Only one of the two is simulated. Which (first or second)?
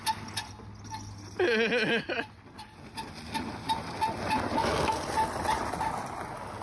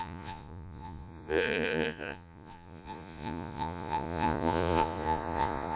second